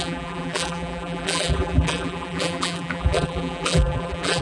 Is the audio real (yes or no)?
no